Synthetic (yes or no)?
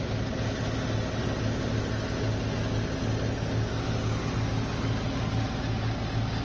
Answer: no